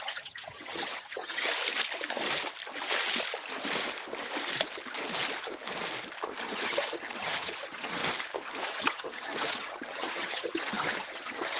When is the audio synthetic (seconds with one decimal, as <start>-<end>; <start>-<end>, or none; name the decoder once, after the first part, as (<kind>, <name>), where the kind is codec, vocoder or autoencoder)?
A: 0.0-1.5 (vocoder, HiFi-GAN); 6.4-8.0; 8.7-11.6